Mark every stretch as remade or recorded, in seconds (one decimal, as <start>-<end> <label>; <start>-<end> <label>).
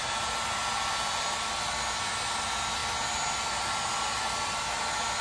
0.0-0.6 recorded; 0.6-1.2 remade; 1.2-5.2 recorded